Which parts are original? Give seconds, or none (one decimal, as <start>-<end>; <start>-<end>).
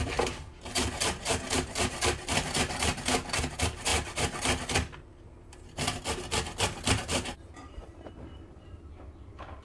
3.9-6.9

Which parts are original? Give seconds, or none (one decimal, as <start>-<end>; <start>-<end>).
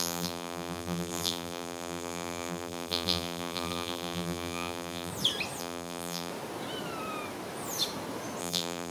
5.1-5.6; 6.3-8.4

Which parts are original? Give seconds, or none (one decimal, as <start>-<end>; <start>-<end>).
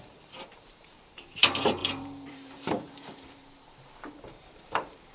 3.4-4.2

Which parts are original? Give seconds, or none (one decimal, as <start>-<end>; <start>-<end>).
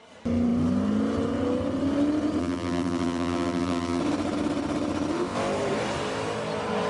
0.0-2.4; 4.0-6.9